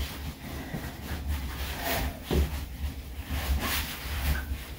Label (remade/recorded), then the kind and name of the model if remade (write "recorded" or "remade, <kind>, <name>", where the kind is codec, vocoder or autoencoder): recorded